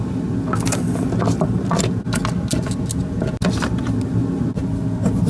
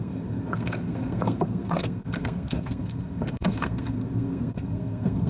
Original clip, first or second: first